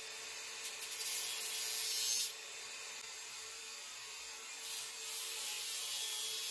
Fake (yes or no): no